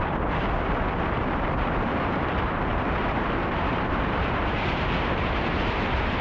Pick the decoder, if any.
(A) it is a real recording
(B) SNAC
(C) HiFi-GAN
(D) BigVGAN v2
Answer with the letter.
D